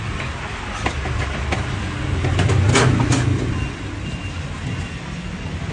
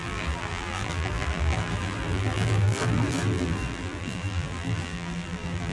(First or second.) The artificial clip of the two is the second